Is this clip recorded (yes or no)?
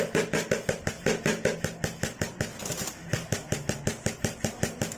yes